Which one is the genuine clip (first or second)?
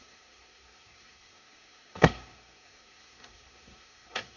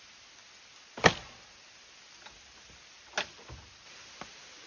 second